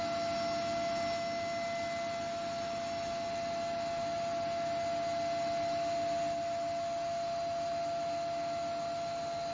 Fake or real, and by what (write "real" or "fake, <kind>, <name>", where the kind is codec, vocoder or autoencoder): real